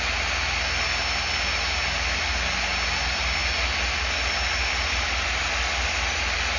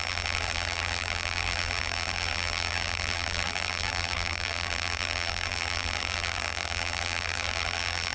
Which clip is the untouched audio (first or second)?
first